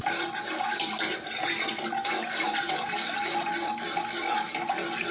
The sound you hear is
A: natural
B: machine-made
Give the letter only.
A